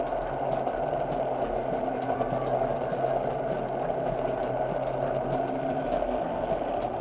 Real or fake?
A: real